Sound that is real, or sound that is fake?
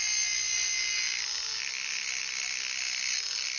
real